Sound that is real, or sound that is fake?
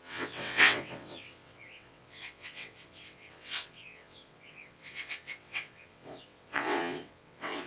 fake